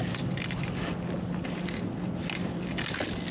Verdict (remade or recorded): recorded